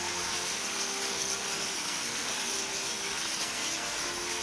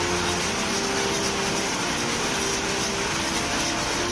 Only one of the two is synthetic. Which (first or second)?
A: first